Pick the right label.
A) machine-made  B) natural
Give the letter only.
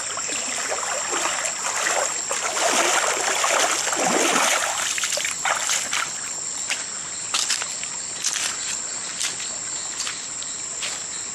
B